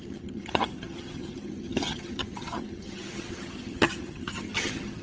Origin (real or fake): fake